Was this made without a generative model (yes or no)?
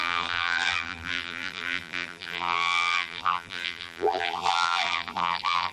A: no